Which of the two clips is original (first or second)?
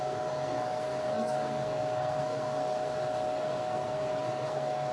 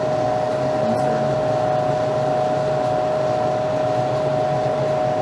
second